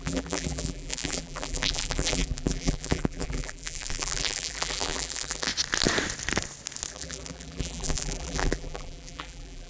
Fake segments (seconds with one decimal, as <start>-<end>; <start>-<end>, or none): 0.0-5.5; 6.9-9.7